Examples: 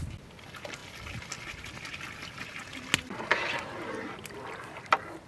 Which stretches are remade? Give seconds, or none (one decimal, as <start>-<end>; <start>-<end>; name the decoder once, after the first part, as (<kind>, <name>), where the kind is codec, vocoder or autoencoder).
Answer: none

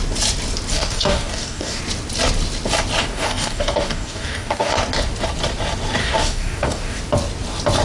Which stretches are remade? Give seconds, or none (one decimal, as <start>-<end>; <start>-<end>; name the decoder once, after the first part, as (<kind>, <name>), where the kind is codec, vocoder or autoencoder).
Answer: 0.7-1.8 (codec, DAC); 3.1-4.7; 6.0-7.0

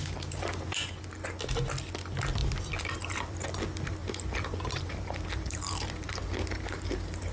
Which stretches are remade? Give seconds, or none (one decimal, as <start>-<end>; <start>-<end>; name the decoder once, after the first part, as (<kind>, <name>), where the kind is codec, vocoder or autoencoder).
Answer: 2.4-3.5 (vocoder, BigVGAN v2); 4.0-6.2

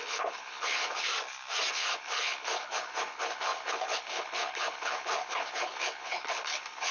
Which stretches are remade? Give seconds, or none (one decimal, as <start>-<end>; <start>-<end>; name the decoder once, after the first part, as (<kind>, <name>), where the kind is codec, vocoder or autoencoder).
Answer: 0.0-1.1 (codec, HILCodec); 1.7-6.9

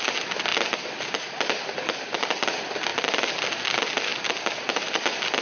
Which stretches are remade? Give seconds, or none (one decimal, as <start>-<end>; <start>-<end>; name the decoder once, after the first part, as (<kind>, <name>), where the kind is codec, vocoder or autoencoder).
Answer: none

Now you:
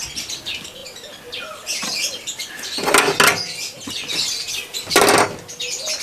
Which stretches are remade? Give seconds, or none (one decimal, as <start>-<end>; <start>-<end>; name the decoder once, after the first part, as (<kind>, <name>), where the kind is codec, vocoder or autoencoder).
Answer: none

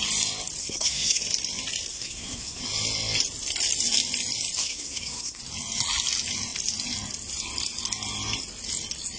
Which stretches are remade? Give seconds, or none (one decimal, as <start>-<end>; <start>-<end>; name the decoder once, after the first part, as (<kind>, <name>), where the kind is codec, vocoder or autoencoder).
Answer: 0.6-1.2 (codec, SNAC); 1.9-2.6; 4.6-5.4

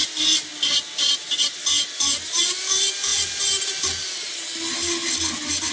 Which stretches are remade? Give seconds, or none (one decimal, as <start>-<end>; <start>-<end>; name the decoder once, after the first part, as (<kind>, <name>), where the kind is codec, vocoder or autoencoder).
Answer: none